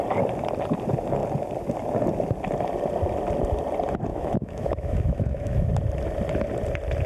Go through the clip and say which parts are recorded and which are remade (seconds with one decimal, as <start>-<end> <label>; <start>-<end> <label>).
0.0-4.1 recorded; 4.1-5.7 remade; 5.7-7.1 recorded